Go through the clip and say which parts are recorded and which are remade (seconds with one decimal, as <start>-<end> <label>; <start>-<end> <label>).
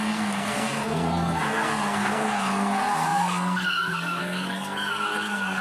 0.0-5.6 remade